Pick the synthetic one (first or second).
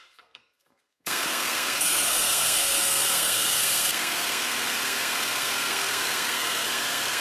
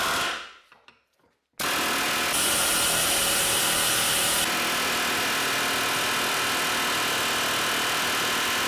first